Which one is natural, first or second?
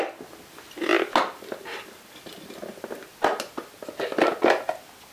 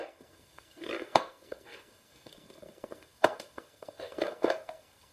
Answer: first